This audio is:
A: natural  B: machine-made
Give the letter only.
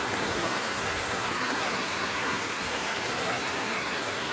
B